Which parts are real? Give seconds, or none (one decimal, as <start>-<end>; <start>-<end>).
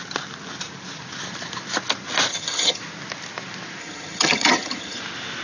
0.0-2.3; 2.8-3.8; 5.0-5.4